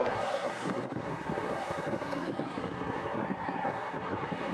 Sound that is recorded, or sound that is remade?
remade